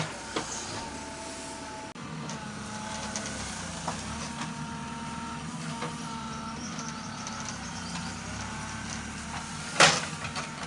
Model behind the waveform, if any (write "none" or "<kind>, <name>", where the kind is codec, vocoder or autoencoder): none